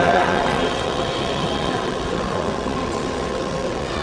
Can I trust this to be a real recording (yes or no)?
no